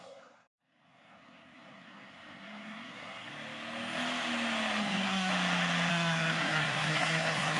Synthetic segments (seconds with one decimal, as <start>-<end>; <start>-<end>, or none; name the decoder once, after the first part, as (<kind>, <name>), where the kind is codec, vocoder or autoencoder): 0.0-3.3 (codec, SNAC); 4.8-5.3; 5.9-7.6